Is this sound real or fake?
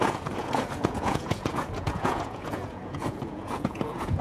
fake